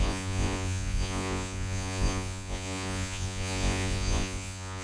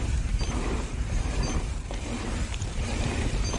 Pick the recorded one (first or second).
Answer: second